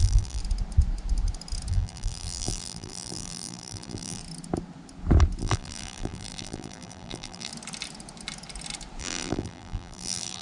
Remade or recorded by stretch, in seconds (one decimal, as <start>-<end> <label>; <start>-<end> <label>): 0.0-0.4 remade; 0.4-1.7 recorded; 1.7-4.2 remade; 4.2-5.4 recorded; 5.4-7.5 remade; 7.5-9.0 recorded; 9.0-10.4 remade